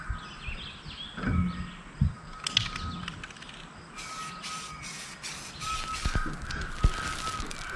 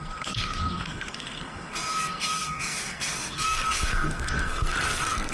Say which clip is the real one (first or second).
first